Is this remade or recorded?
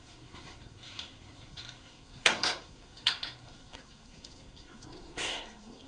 remade